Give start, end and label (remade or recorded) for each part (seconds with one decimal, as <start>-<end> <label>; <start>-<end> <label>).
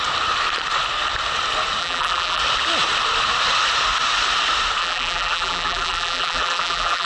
0.0-1.8 recorded; 1.8-2.4 remade; 2.4-4.8 recorded; 4.8-7.1 remade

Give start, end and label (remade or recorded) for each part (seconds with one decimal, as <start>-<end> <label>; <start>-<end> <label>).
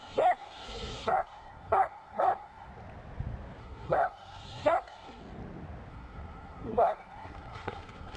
0.0-2.7 remade; 2.7-3.6 recorded; 3.6-5.2 remade; 5.2-5.9 recorded; 5.9-8.2 remade